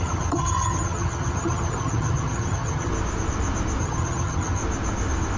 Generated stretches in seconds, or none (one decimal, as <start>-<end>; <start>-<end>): 0.0-2.9; 3.8-4.6